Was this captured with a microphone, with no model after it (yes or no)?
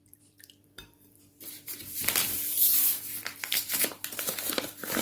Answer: no